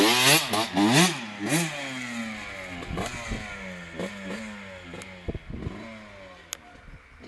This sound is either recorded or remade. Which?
recorded